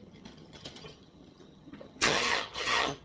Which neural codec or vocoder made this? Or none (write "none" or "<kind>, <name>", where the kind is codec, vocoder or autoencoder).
vocoder, HiFi-GAN